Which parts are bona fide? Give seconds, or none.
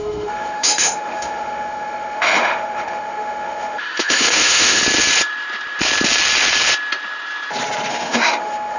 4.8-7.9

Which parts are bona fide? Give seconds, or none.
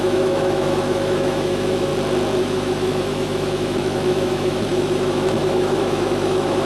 1.9-2.4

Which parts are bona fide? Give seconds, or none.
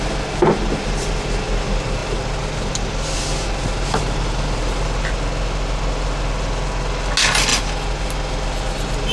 0.0-9.1